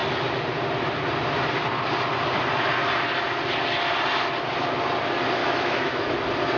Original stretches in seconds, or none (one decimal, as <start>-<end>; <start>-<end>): 0.0-5.4; 6.1-6.6